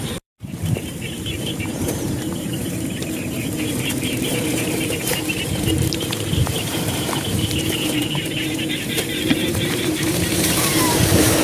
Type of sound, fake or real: fake